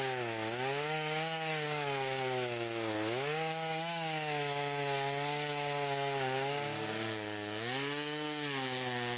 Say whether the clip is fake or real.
fake